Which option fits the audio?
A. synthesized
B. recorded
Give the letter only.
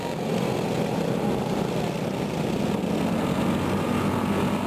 B